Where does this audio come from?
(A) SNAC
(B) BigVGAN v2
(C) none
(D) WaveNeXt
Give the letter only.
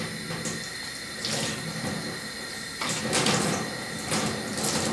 C